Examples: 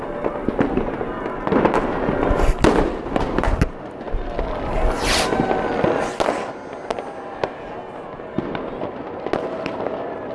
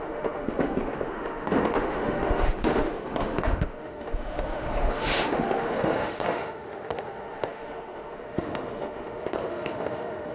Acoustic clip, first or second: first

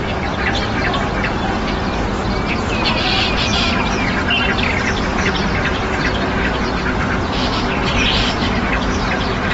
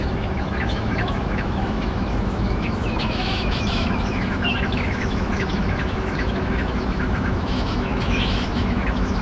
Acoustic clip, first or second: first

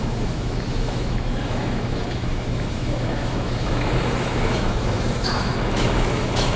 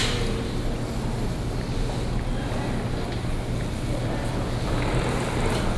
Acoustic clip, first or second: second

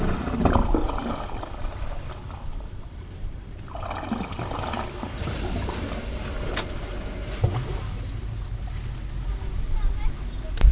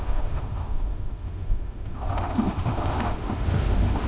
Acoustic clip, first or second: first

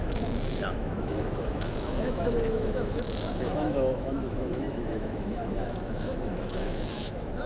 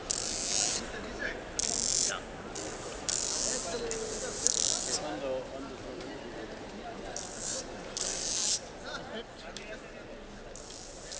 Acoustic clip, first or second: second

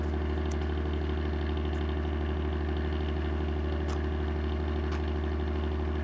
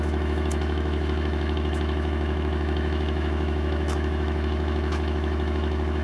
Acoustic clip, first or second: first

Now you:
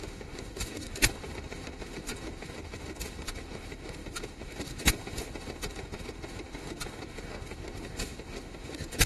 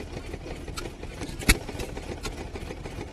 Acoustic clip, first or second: second